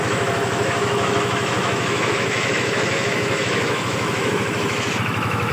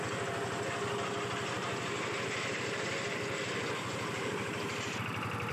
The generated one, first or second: first